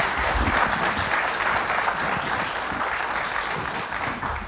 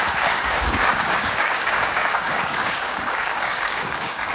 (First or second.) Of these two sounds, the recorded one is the first